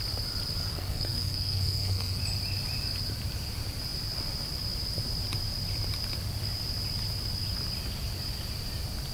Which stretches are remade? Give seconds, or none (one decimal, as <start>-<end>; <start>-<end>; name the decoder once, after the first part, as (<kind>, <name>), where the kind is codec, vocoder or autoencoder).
0.7-2.2 (codec, SNAC)